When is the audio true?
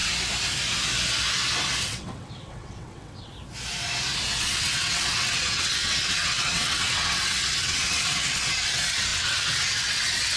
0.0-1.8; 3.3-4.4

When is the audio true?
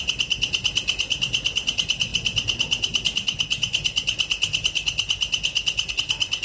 0.0-6.4